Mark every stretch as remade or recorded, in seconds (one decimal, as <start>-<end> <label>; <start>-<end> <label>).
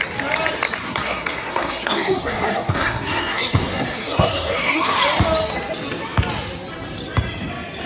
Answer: 0.0-0.8 recorded; 0.8-5.0 remade; 5.0-7.9 recorded